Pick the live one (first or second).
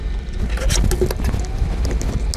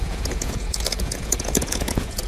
first